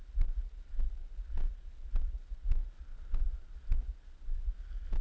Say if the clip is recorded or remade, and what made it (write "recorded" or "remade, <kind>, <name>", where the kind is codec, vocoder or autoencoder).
recorded